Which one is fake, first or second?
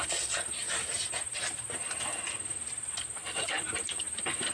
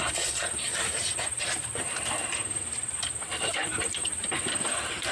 second